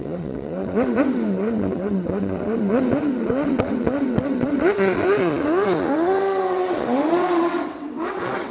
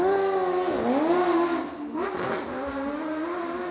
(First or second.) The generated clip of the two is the first